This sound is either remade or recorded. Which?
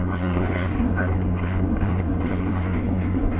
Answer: remade